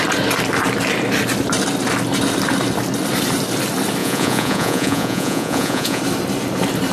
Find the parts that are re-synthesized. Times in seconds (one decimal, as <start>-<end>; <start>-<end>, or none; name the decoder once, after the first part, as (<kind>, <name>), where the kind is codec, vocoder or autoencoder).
4.0-6.0 (vocoder, Vocos)